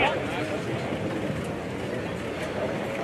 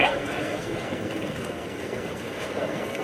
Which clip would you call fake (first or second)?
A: second